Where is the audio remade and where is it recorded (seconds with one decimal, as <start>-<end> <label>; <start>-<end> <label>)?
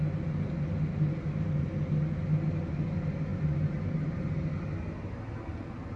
0.0-6.0 recorded